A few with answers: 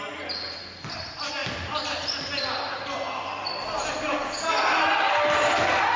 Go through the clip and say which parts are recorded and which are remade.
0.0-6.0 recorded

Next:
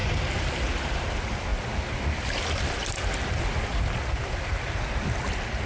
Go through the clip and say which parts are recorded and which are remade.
0.0-5.7 recorded

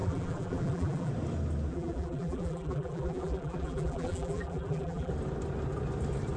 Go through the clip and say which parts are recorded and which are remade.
0.0-1.1 remade; 1.1-1.7 recorded; 1.7-5.1 remade; 5.1-6.4 recorded

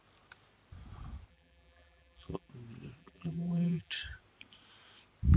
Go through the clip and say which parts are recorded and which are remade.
0.0-1.3 recorded; 1.3-2.5 remade; 2.5-3.0 recorded; 3.0-3.9 remade; 3.9-5.4 recorded

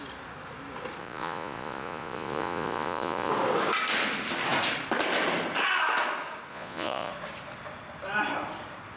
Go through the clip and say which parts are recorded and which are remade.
0.0-1.0 recorded; 1.0-3.3 remade; 3.3-6.5 recorded; 6.5-7.1 remade; 7.1-9.0 recorded

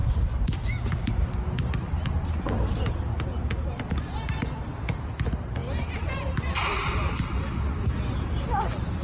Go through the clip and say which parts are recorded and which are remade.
0.0-9.0 recorded